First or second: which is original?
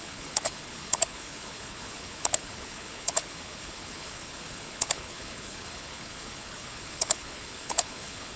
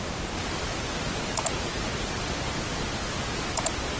second